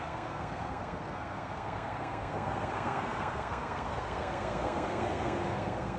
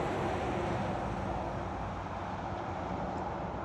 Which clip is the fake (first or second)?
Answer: first